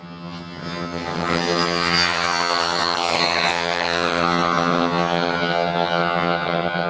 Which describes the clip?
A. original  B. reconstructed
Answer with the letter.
B